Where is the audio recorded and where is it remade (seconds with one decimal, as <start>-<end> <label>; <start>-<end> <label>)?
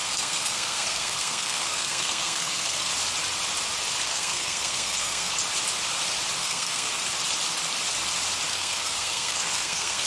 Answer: 0.0-2.9 remade; 2.9-4.1 recorded; 4.1-5.3 remade; 5.3-6.4 recorded; 6.4-6.9 remade; 6.9-8.5 recorded; 8.5-10.1 remade